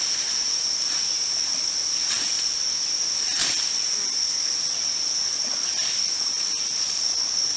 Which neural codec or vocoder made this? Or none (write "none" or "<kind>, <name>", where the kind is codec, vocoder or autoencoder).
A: none